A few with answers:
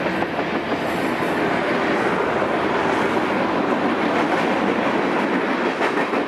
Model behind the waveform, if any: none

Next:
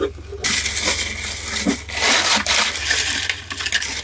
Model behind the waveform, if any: none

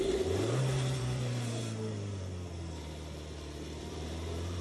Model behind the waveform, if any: vocoder, BigVGAN v2